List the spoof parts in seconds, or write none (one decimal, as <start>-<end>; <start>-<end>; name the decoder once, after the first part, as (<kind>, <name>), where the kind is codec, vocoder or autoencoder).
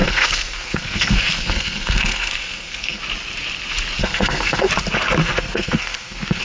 0.0-3.0 (codec, SNAC); 4.0-4.7; 5.2-6.4